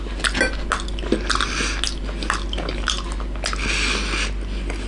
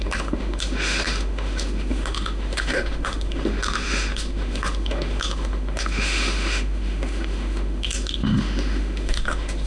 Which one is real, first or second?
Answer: first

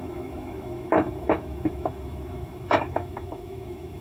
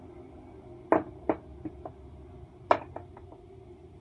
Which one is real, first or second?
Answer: second